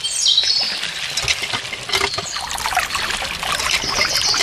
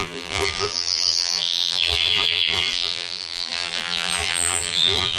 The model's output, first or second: second